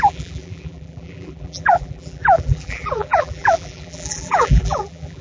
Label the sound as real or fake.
fake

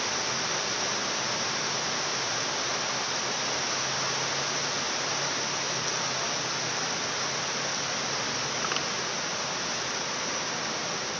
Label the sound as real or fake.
real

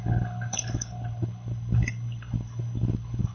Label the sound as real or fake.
fake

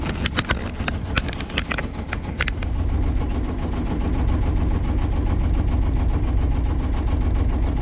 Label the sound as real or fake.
real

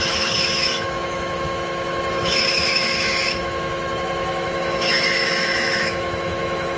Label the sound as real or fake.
fake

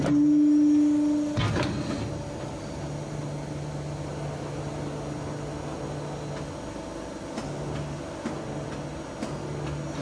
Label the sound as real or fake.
real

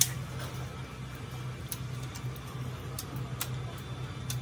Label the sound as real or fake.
real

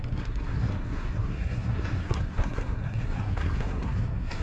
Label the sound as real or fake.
fake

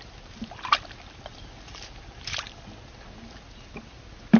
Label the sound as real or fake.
real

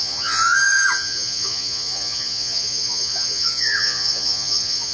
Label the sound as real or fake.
fake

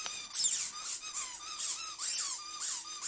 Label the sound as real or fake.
real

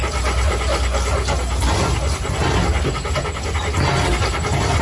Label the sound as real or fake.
real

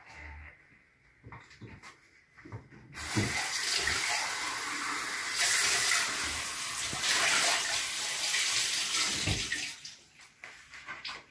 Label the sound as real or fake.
real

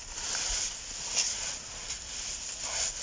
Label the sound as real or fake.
real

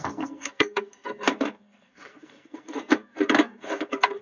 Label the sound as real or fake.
fake